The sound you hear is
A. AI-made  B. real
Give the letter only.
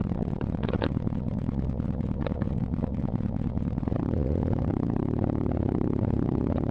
A